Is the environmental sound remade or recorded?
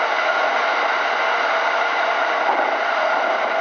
recorded